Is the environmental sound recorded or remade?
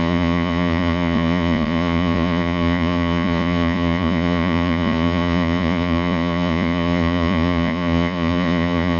remade